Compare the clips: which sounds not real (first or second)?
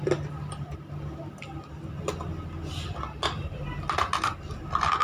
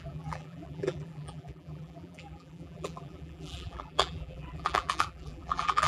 second